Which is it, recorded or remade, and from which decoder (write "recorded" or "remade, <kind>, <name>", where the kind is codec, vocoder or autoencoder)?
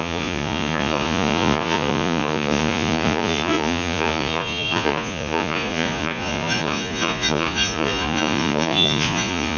remade, vocoder, Vocos